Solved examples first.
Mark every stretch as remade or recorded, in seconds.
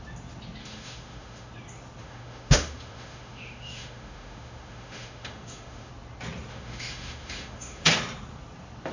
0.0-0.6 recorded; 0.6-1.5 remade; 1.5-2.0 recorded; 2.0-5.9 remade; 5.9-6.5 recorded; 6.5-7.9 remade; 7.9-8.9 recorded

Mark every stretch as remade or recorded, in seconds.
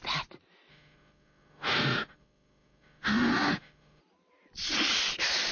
0.0-0.7 recorded; 0.7-4.0 remade; 4.0-5.5 recorded